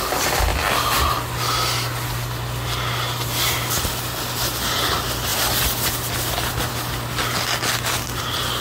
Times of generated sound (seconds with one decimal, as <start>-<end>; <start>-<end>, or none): none